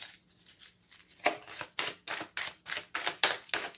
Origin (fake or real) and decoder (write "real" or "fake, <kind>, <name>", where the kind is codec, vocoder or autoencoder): real